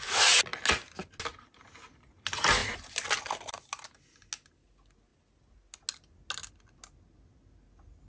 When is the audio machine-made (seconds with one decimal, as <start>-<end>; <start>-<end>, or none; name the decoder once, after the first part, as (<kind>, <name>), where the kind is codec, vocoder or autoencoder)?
none